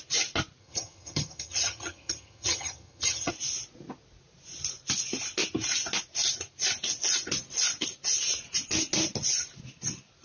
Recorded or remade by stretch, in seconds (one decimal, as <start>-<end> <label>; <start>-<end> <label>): 0.0-0.6 recorded; 0.6-3.3 remade; 3.3-10.2 recorded